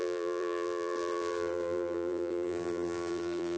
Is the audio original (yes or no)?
no